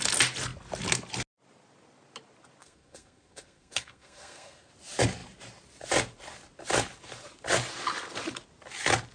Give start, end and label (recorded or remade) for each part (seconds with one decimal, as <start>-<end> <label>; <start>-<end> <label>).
0.0-2.6 recorded; 2.6-4.7 remade; 4.7-9.1 recorded